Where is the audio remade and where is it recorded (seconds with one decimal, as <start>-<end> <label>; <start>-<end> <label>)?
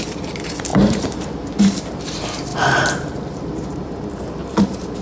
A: 0.0-5.0 remade